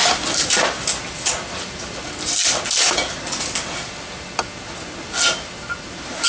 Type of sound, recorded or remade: recorded